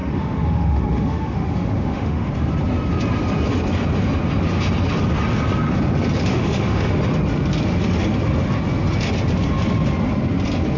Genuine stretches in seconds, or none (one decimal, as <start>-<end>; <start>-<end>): 2.3-6.2; 6.9-10.8